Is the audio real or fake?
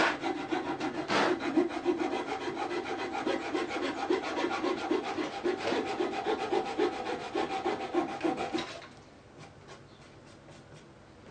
real